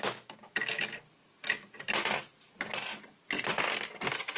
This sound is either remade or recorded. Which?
recorded